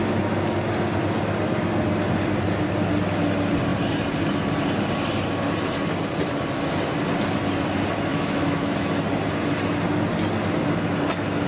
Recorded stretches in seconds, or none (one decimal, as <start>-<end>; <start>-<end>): 0.0-8.1; 8.9-11.5